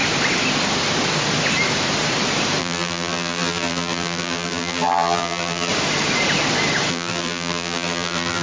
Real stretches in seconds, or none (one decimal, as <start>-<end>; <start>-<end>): 0.0-2.6; 5.7-6.9